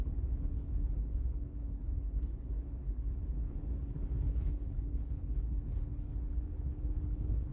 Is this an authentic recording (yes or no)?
no